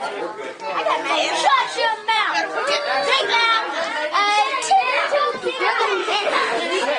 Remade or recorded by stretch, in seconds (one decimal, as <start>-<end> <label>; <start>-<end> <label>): 0.0-6.0 recorded; 6.0-6.6 remade; 6.6-7.0 recorded